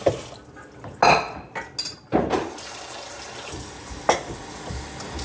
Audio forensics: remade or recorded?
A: recorded